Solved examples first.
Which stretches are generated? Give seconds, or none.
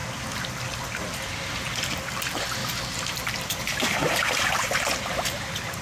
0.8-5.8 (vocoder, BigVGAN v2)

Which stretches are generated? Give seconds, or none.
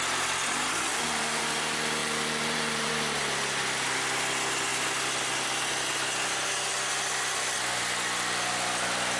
0.9-1.4 (vocoder, BigVGAN v2); 2.0-2.9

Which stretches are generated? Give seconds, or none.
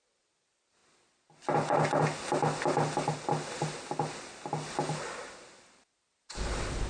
none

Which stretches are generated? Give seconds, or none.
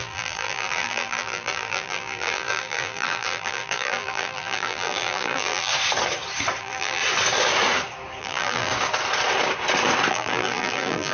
0.0-5.7 (vocoder, BigVGAN v2); 6.6-7.0; 8.2-8.7; 10.1-11.1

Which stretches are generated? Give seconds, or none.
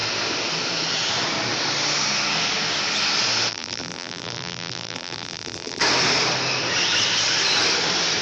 3.5-5.8 (vocoder, BigVGAN v2)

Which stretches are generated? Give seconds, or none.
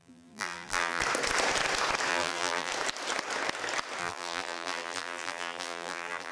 0.0-1.0 (vocoder, BigVGAN v2); 2.1-2.7; 4.0-6.3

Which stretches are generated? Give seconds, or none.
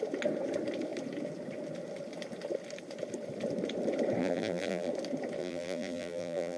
4.2-4.9 (vocoder, BigVGAN v2); 5.4-6.6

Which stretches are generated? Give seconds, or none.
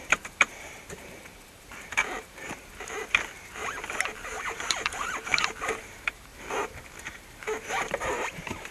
0.0-6.3 (vocoder, BigVGAN v2); 7.0-8.7